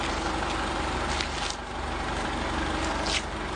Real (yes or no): yes